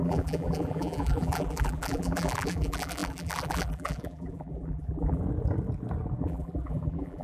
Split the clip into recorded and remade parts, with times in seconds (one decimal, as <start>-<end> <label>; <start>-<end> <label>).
0.0-5.2 remade; 5.2-6.2 recorded; 6.2-7.2 remade